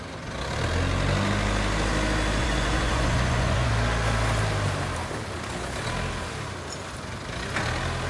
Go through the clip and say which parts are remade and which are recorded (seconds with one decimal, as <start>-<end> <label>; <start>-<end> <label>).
0.0-2.4 recorded; 2.4-3.7 remade; 3.7-8.1 recorded